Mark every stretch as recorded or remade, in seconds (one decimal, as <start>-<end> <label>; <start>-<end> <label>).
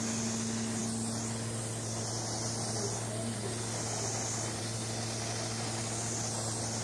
0.0-6.8 recorded